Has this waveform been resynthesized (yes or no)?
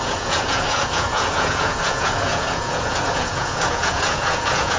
yes